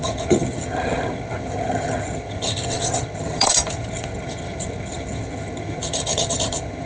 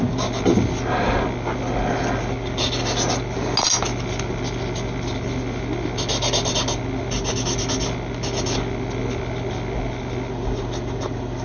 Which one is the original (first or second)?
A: second